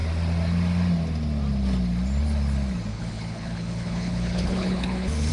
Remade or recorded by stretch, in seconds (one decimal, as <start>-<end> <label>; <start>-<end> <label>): 0.0-2.9 recorded; 2.9-5.3 remade